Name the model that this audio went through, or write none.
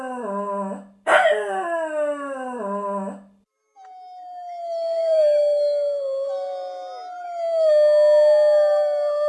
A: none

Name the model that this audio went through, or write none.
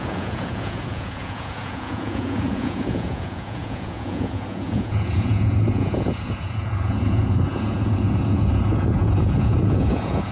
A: vocoder, Vocos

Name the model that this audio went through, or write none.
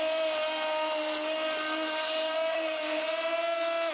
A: none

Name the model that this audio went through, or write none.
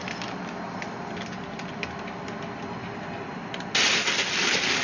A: none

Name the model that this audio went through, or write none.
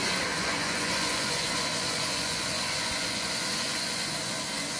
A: vocoder, Vocos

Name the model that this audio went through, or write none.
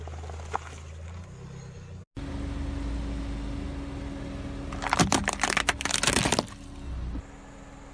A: none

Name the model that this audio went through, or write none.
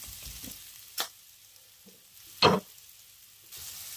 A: none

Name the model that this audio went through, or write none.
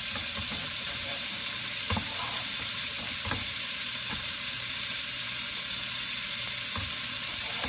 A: vocoder, BigVGAN v2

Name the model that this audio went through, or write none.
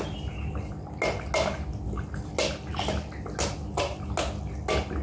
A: none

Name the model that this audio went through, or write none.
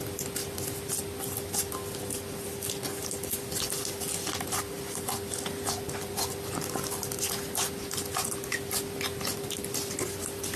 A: none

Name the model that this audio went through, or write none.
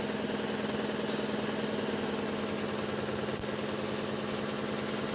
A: none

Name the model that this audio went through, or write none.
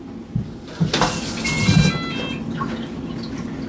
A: none